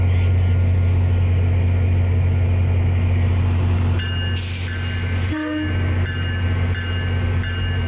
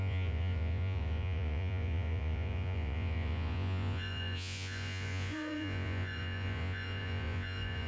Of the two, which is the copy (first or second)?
second